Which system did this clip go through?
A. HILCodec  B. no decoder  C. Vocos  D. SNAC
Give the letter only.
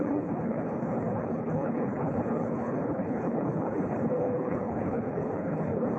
A